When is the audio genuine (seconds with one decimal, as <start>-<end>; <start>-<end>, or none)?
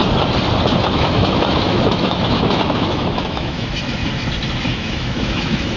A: 0.0-0.8; 4.0-4.7